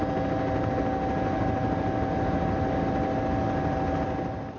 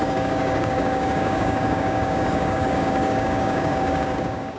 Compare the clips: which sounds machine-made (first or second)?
second